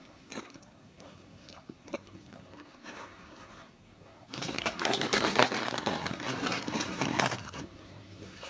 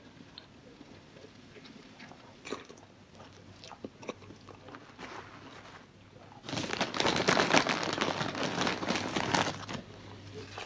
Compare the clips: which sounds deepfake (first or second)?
first